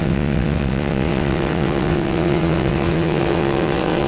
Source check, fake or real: fake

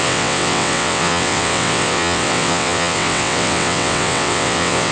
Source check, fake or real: fake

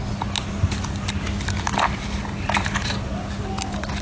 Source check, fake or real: real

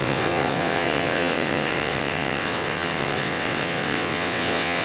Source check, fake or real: fake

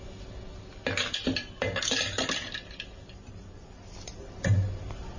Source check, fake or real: real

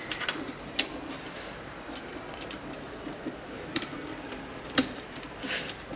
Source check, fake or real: real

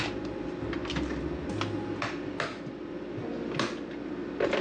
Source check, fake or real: real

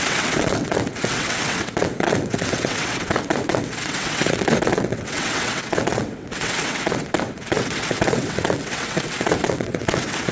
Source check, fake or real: fake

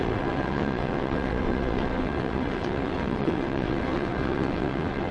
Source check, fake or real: fake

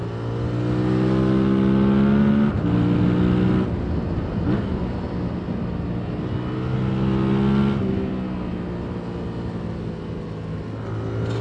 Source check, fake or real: real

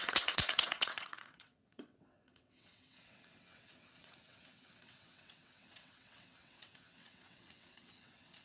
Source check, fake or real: fake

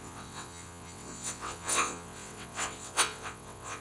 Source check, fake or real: fake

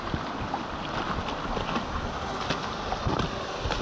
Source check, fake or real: real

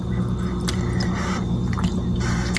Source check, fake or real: real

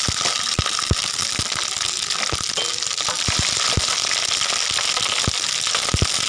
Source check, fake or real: real